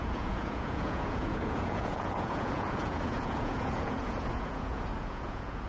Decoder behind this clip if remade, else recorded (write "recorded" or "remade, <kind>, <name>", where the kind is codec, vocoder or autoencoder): remade, vocoder, Vocos